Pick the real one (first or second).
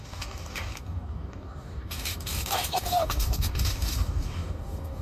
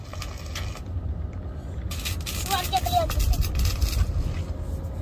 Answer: second